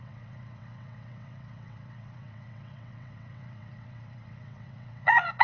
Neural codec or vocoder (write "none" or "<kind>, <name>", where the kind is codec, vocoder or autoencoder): vocoder, WaveNeXt